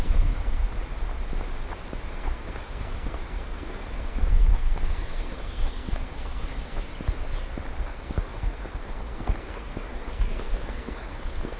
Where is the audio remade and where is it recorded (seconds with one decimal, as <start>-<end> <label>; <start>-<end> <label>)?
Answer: 0.0-0.6 remade; 0.6-2.0 recorded; 2.0-6.9 remade; 6.9-7.8 recorded; 7.8-11.6 remade